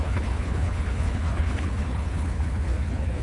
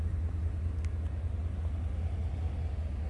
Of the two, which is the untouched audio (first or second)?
second